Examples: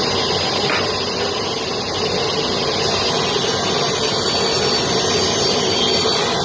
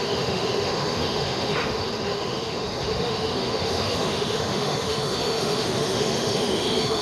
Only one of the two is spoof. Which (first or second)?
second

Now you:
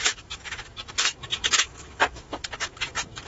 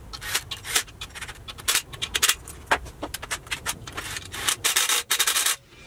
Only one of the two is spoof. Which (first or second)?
first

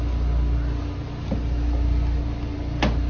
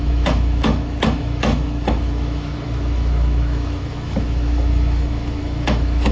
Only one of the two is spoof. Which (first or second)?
second